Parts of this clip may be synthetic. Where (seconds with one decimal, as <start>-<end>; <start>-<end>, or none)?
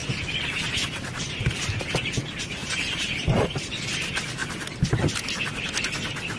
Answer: 2.6-3.7